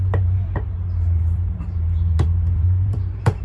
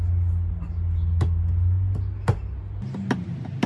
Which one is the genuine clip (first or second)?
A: second